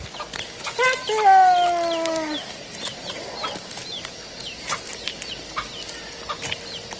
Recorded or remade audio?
recorded